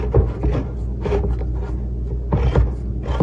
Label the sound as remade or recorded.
recorded